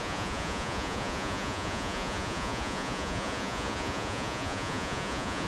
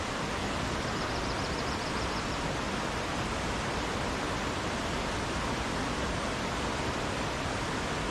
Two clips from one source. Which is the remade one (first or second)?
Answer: first